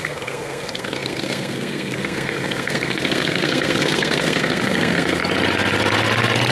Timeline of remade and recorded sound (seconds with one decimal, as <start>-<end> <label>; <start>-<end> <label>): 0.0-5.2 remade; 5.2-6.5 recorded